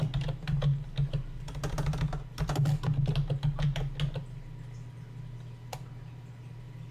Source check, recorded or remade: recorded